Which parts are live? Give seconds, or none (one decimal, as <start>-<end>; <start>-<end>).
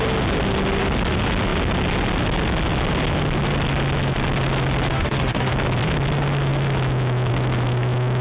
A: 0.0-4.9; 5.5-8.2